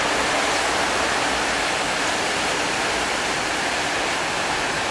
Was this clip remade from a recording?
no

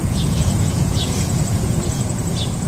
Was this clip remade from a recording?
yes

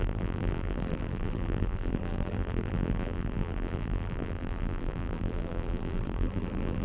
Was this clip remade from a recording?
yes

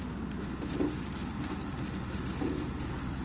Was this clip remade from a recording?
no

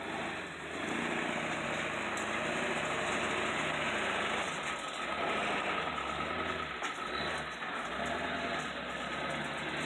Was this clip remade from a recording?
no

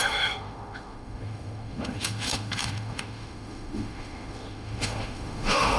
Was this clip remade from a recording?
yes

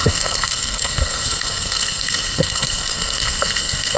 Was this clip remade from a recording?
yes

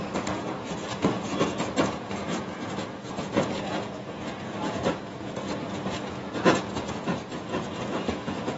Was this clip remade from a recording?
yes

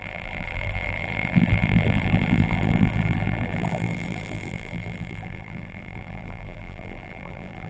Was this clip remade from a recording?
yes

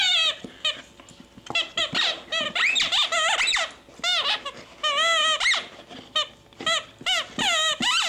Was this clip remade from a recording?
no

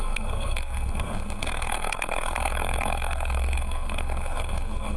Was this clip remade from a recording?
yes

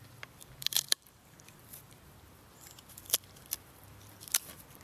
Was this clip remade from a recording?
yes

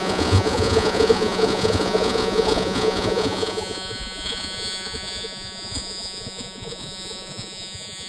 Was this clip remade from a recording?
yes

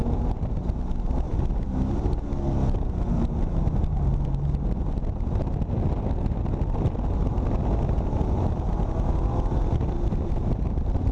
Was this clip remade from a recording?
no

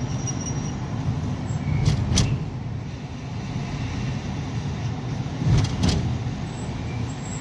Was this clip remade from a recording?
no